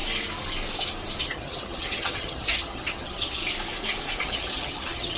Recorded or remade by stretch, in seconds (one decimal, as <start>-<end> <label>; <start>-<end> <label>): 0.0-1.2 recorded; 1.2-3.4 remade; 3.4-4.2 recorded; 4.2-5.2 remade